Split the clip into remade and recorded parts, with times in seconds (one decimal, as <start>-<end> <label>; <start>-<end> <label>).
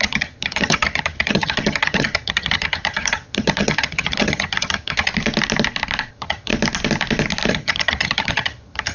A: 0.0-5.1 remade; 5.1-6.1 recorded; 6.1-6.5 remade; 6.5-7.5 recorded; 7.5-8.9 remade